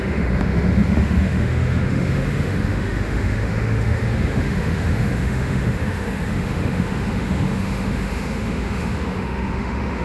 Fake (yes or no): yes